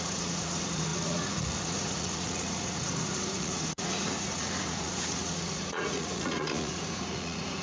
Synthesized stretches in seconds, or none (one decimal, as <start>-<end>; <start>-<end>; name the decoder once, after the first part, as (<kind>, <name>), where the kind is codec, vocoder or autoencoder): 0.0-7.6 (vocoder, Vocos)